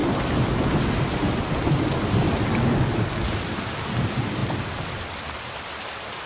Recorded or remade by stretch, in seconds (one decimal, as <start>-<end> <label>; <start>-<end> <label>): 0.0-6.3 recorded